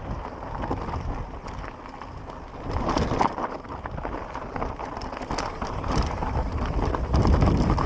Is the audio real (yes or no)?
yes